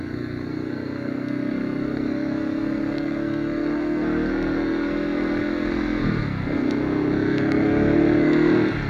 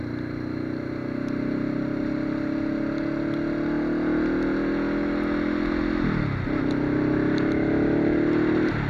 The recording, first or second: second